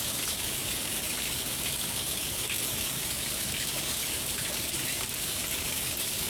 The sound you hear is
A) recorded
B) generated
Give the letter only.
B